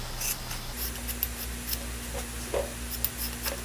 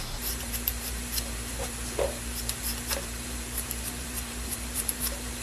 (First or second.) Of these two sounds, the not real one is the second